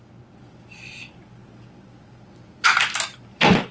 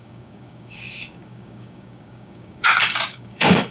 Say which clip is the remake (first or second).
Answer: second